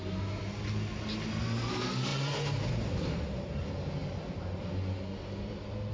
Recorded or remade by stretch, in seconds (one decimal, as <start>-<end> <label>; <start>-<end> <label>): 0.0-5.9 recorded